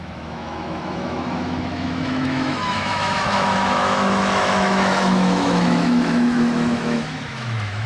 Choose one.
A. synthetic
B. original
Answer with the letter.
A